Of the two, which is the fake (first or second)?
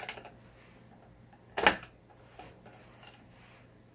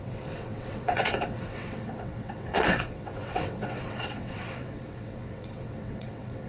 second